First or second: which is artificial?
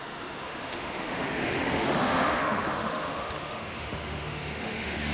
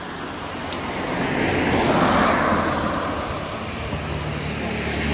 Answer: first